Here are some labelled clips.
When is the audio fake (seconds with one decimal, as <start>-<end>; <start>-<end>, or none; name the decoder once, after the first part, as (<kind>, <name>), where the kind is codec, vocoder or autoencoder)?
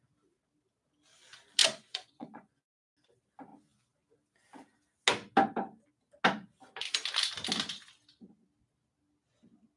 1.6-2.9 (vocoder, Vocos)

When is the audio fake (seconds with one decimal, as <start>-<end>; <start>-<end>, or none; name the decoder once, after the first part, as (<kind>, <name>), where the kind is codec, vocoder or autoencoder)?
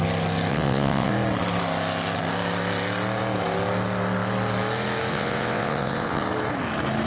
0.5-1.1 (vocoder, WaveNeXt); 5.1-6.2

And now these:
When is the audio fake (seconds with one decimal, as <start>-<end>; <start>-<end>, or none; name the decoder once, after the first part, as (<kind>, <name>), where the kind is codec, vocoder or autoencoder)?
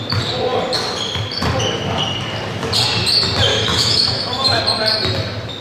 3.5-4.6 (autoencoder, DAC-VAE)